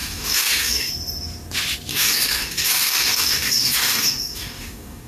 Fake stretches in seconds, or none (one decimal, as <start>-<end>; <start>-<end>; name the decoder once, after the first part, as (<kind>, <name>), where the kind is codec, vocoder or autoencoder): 0.0-0.9 (codec, DAC); 1.9-5.1